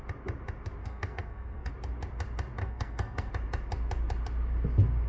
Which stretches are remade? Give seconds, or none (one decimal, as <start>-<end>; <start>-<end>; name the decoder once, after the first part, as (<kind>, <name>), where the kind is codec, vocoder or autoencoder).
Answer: 0.8-1.7 (codec, SNAC); 2.6-3.3